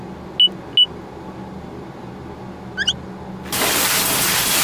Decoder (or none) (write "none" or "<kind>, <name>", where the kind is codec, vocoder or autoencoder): none